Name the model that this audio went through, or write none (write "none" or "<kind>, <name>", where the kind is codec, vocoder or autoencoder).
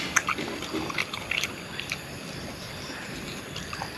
vocoder, BigVGAN v2